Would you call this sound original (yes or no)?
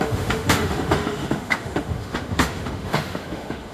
no